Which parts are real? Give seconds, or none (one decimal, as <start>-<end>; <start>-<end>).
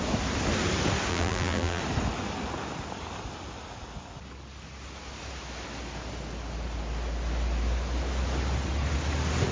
0.0-1.1; 1.8-9.5